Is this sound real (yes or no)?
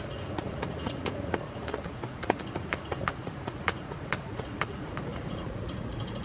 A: no